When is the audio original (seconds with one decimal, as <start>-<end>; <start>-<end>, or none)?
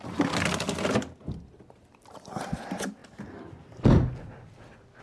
0.0-5.0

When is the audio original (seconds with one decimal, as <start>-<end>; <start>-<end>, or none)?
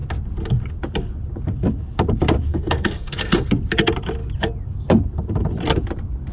0.0-2.5; 3.5-6.3